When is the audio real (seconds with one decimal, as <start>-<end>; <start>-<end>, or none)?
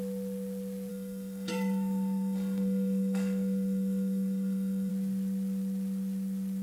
0.0-0.9; 4.9-6.6